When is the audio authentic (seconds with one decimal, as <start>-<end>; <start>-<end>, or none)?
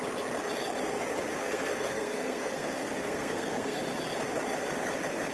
0.0-1.4; 3.8-5.3